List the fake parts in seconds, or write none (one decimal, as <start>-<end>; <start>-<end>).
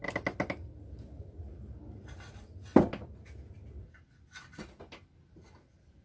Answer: none